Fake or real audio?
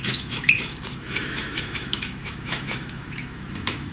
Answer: fake